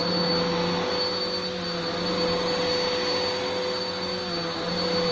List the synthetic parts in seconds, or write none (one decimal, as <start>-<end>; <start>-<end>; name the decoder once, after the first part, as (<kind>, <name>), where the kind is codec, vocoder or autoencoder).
none

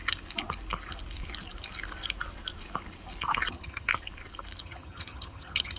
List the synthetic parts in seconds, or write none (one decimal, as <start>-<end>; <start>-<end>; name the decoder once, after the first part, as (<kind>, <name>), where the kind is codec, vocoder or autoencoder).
3.5-3.9 (vocoder, HiFi-GAN); 4.6-5.8

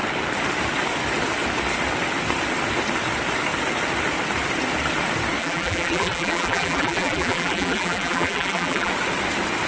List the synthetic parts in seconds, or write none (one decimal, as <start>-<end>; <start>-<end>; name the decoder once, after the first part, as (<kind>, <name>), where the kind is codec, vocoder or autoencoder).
5.4-8.9 (vocoder, BigVGAN v2)

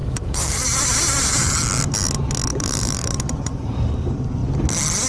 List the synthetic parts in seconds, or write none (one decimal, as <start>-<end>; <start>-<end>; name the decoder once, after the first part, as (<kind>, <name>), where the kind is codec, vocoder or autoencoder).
0.0-1.5 (vocoder, BigVGAN v2); 2.5-3.6

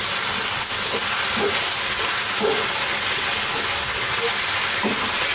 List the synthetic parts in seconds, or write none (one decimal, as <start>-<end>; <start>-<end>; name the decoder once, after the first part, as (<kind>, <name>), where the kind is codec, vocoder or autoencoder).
none